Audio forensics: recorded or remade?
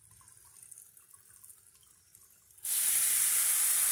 recorded